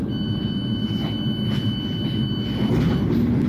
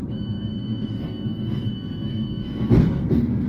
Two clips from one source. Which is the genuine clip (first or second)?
first